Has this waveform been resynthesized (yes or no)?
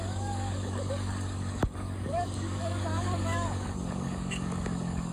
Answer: yes